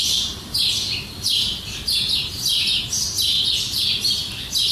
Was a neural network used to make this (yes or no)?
no